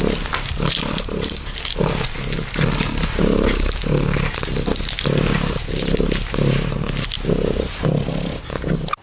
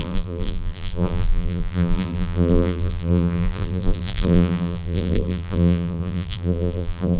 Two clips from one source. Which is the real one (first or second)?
first